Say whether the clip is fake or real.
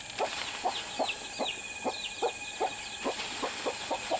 real